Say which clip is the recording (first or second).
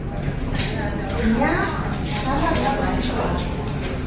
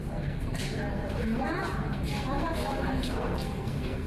first